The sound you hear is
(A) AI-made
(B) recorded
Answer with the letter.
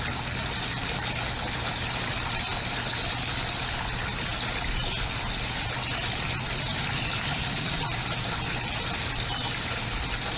B